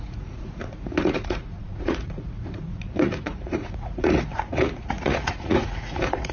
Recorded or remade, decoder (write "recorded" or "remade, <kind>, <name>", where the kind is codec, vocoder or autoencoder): remade, vocoder, Vocos